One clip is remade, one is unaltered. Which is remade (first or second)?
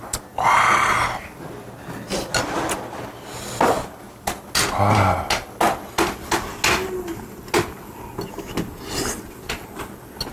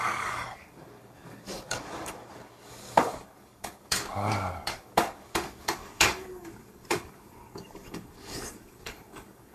second